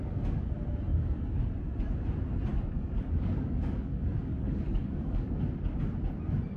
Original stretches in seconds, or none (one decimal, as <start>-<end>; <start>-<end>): 0.5-0.9; 1.4-2.5; 5.4-6.6